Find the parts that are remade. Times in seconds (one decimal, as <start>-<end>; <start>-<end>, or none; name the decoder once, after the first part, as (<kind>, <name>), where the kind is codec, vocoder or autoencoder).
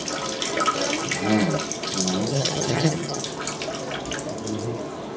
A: 2.3-3.2 (vocoder, HiFi-GAN)